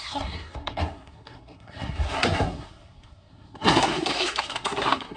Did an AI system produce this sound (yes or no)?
yes